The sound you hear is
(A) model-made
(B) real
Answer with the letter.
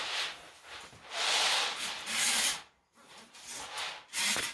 A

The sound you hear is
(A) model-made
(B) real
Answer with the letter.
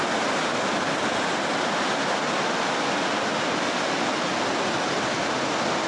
B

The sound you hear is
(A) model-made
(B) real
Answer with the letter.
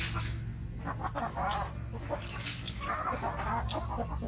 B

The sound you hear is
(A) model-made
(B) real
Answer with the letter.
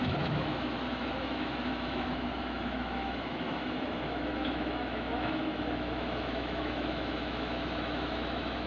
A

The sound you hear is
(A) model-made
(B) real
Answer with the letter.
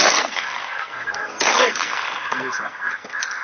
A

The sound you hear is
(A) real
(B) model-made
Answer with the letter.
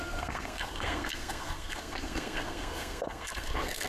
B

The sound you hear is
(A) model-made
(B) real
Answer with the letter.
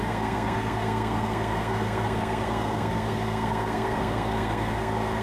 A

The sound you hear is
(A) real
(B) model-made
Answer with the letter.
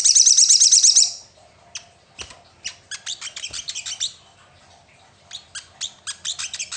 A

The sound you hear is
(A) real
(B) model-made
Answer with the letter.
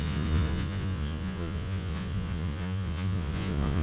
B